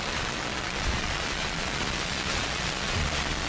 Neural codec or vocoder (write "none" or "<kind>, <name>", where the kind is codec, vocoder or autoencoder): vocoder, Vocos